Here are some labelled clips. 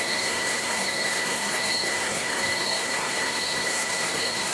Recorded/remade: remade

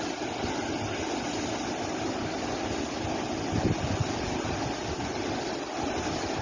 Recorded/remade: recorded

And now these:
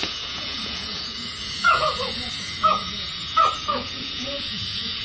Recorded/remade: remade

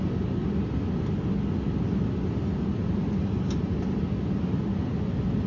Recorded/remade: recorded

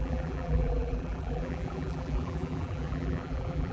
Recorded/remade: remade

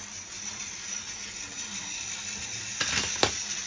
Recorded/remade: recorded